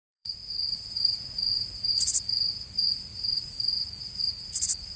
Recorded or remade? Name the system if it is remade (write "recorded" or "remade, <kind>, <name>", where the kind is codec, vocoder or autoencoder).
remade, vocoder, Vocos